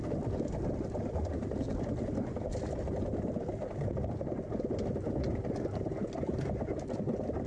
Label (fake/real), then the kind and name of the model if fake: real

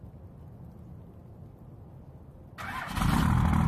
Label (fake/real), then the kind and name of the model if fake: real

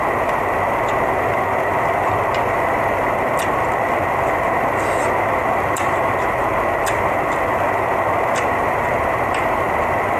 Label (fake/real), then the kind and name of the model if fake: real